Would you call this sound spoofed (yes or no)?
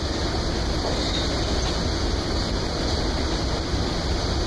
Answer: no